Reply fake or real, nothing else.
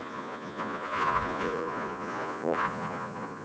fake